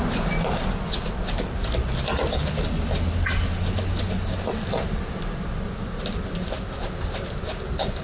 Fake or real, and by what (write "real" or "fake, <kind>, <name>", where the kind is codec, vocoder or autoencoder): real